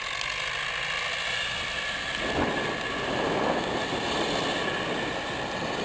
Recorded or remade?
recorded